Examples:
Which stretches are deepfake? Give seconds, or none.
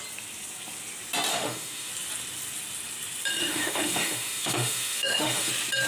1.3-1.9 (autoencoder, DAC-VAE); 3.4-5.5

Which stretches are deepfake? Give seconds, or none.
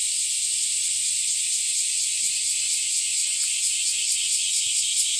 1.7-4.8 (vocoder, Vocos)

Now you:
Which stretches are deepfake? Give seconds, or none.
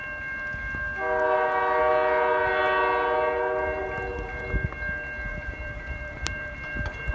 5.3-7.1 (vocoder, BigVGAN v2)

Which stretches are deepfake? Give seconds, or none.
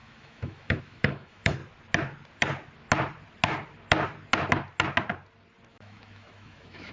0.0-1.6 (autoencoder, DAC-VAE); 5.7-6.9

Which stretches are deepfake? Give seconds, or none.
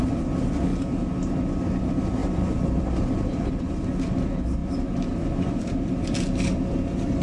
0.0-0.7 (vocoder, BigVGAN v2); 1.8-7.2